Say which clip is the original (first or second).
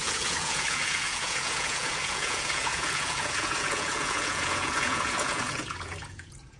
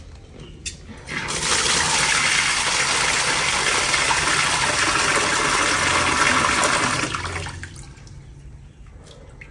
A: second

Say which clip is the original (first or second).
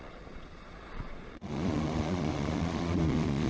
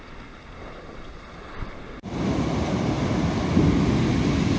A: second